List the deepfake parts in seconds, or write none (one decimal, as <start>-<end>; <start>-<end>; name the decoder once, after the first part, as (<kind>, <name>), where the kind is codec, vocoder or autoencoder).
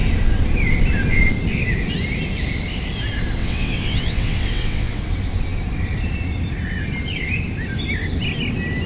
3.4-5.0 (vocoder, WaveNeXt)